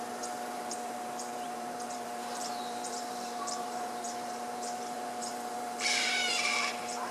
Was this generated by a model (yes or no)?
yes